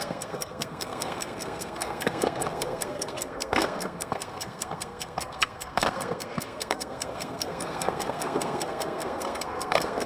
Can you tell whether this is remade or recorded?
remade